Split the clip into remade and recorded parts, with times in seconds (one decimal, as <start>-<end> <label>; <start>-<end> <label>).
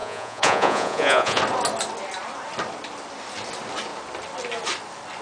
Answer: 0.0-1.4 remade; 1.4-5.2 recorded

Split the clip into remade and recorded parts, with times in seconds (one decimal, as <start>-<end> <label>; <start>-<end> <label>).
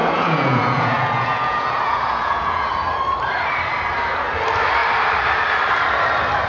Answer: 0.0-2.7 remade; 2.7-6.5 recorded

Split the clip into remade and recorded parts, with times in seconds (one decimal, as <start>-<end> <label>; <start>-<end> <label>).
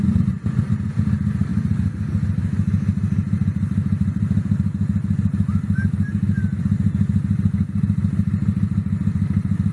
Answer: 0.0-9.7 recorded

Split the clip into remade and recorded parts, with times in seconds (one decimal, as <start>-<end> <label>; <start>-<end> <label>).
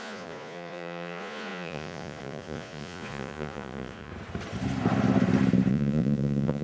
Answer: 0.0-4.1 remade; 4.1-5.7 recorded; 5.7-6.6 remade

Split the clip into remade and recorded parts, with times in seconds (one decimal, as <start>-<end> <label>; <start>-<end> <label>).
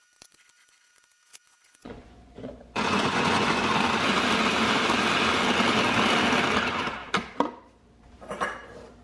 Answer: 0.0-3.7 remade; 3.7-9.0 recorded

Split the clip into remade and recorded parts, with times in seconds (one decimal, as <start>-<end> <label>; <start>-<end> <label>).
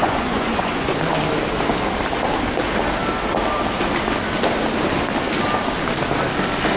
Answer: 0.0-1.0 remade; 1.0-6.8 recorded